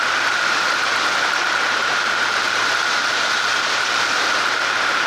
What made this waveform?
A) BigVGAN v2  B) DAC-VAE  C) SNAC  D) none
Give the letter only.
A